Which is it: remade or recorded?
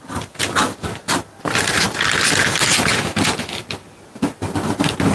recorded